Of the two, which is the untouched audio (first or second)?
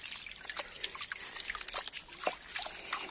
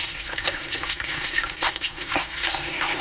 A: first